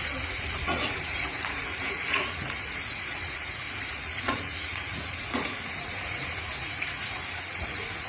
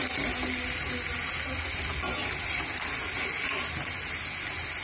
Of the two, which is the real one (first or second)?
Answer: second